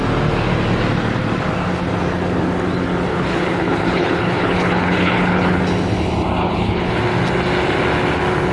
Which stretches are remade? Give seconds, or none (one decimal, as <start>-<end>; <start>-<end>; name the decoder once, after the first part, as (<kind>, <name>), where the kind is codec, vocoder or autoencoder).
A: 3.1-5.6 (codec, HILCodec); 6.4-7.0